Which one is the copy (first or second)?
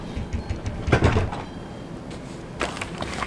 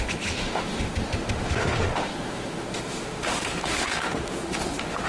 second